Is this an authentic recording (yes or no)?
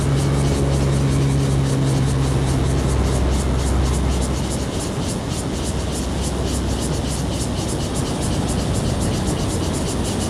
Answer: yes